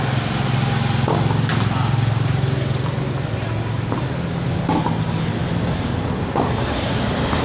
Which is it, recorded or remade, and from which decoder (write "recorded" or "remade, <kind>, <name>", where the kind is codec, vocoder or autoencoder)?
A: recorded